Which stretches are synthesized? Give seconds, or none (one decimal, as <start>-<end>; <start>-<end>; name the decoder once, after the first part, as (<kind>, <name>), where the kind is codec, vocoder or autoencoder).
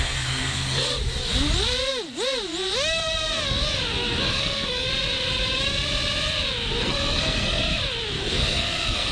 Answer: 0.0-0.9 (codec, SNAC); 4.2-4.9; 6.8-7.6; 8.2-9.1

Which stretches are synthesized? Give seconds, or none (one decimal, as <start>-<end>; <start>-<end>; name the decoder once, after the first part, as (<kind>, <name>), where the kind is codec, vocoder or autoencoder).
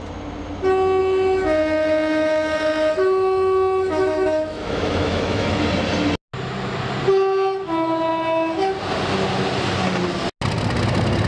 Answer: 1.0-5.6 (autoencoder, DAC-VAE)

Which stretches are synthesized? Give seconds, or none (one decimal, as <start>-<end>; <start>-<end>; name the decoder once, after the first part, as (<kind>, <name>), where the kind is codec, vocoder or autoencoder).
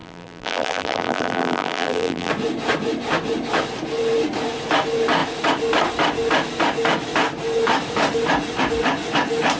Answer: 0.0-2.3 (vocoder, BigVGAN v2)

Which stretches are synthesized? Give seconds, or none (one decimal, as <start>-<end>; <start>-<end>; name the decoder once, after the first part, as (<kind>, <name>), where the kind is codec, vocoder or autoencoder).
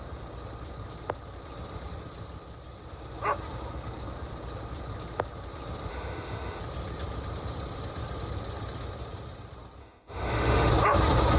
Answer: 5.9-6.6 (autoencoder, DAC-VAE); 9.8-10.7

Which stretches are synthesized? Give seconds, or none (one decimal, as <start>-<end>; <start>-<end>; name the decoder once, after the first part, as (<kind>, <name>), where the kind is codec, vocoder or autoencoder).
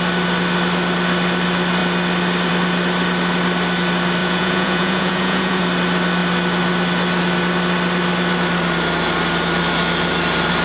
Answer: 4.2-5.6 (vocoder, Vocos)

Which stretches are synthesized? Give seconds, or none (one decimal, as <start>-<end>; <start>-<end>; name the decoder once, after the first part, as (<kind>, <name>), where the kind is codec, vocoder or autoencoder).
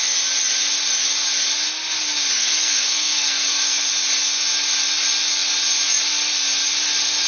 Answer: 2.4-3.9 (codec, SNAC)